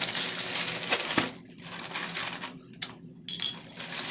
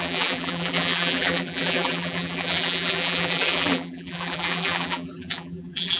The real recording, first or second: first